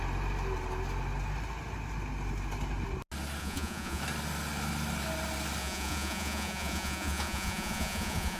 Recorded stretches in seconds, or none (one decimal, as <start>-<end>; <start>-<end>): 0.0-3.4; 4.0-5.6